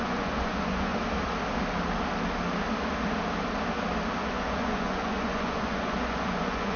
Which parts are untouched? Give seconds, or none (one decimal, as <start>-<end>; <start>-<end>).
0.9-4.3